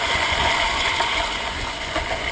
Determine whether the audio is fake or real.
fake